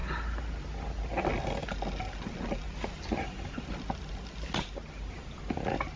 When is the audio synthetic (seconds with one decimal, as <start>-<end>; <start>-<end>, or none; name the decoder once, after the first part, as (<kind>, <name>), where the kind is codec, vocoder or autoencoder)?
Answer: none